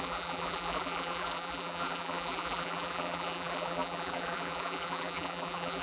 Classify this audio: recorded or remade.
remade